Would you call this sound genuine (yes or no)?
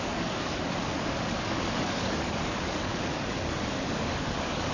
no